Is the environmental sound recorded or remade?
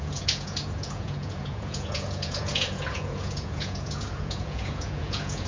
remade